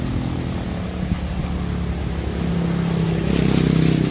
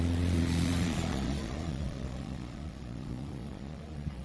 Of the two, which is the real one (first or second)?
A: first